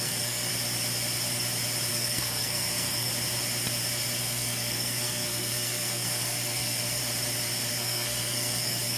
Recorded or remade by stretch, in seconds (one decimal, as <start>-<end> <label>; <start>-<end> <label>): 0.0-0.5 remade; 0.5-1.9 recorded; 1.9-3.1 remade; 3.1-4.2 recorded; 4.2-7.0 remade; 7.0-7.7 recorded; 7.7-9.0 remade